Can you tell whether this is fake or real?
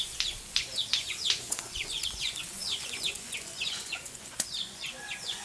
fake